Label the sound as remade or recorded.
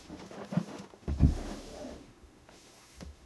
remade